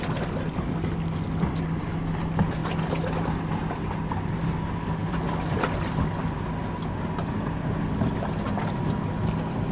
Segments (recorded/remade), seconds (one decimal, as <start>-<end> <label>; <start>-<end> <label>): 0.0-9.7 recorded

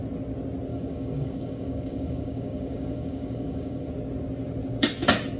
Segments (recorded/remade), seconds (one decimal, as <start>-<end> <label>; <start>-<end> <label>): 0.0-0.7 recorded; 0.7-3.9 remade; 3.9-5.4 recorded

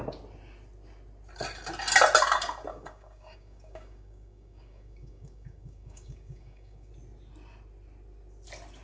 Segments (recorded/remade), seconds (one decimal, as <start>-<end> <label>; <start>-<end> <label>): 0.0-2.7 recorded; 2.7-6.9 remade; 6.9-8.8 recorded

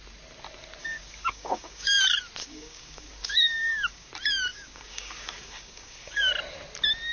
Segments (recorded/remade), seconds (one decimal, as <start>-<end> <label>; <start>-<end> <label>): 0.0-0.8 recorded; 0.8-2.0 remade; 2.0-2.4 recorded; 2.4-4.1 remade; 4.1-4.5 recorded; 4.5-6.3 remade; 6.3-7.1 recorded

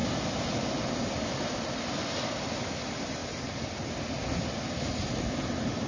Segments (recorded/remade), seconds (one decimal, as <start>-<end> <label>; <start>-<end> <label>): 0.0-5.9 recorded

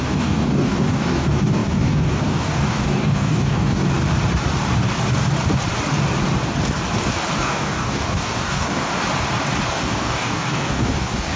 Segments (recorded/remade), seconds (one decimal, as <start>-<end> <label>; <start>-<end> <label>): 0.0-3.8 remade; 3.8-7.4 recorded; 7.4-8.9 remade; 8.9-9.7 recorded; 9.7-11.4 remade